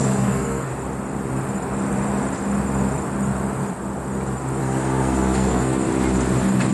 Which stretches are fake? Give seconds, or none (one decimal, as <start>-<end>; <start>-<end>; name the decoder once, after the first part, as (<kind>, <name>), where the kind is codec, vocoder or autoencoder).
0.0-0.7 (codec, SNAC); 4.6-5.9